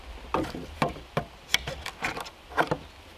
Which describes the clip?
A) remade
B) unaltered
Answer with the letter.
B